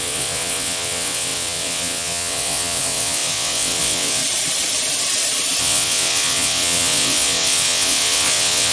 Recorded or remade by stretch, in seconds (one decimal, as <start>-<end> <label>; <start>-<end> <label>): 0.0-4.2 remade; 4.2-5.6 recorded; 5.6-8.7 remade

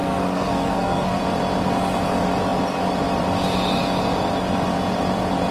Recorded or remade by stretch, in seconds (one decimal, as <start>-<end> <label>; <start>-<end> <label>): 0.0-1.2 remade; 1.2-5.5 recorded

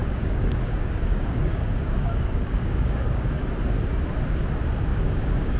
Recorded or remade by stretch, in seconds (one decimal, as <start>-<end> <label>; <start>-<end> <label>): 0.0-3.4 remade; 3.4-4.9 recorded; 4.9-5.6 remade